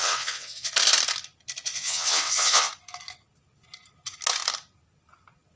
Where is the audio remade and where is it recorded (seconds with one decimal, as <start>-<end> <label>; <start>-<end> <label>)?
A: 0.0-0.7 remade; 0.7-1.7 recorded; 1.7-2.7 remade; 2.7-5.6 recorded